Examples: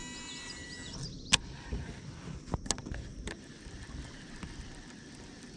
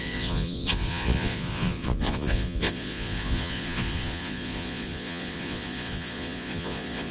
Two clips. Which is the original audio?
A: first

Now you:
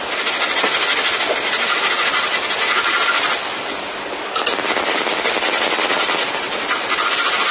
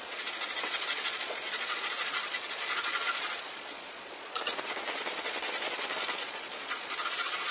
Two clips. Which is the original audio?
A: first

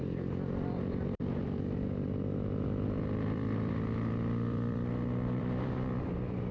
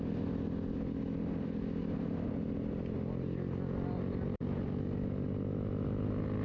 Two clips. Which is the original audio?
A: second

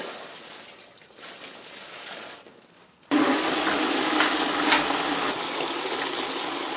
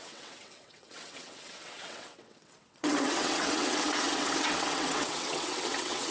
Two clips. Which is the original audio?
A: first